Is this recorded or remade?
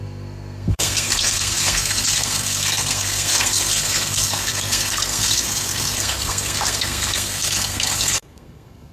remade